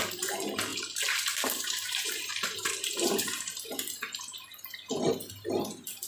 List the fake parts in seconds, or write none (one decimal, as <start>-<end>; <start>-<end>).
0.7-3.8